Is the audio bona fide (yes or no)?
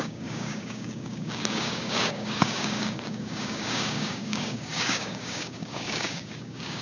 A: no